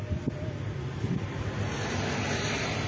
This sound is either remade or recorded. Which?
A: recorded